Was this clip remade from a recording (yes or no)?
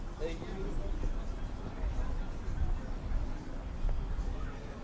no